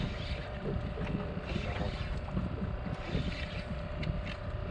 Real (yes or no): yes